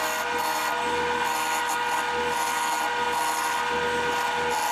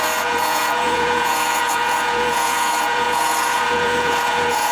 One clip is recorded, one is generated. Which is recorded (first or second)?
first